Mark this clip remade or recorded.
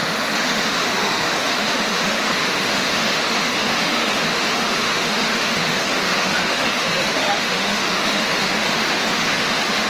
remade